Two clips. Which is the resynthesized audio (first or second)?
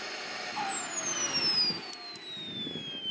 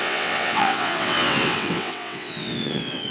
second